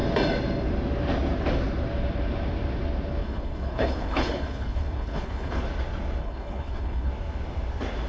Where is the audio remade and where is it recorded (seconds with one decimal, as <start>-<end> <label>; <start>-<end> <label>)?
0.0-3.2 recorded; 3.2-5.6 remade; 5.6-6.2 recorded; 6.2-7.1 remade; 7.1-8.1 recorded